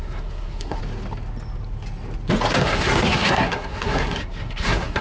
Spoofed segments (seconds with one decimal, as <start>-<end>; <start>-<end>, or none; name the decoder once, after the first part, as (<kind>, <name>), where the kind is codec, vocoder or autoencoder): 0.0-0.8 (codec, SNAC); 2.6-5.0